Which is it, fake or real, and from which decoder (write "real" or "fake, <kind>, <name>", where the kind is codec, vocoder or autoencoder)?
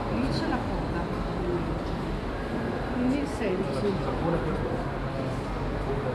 real